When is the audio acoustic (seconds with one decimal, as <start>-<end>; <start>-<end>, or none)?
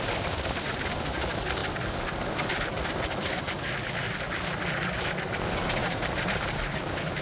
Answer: 0.0-5.8